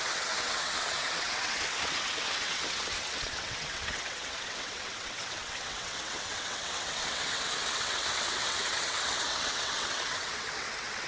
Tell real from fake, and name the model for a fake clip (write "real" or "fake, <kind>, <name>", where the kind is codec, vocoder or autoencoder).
fake, vocoder, WaveNeXt